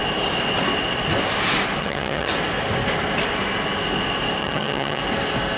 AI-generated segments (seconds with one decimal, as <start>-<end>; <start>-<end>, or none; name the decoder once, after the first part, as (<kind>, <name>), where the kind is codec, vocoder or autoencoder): 1.8-2.3 (vocoder, HiFi-GAN); 4.4-5.0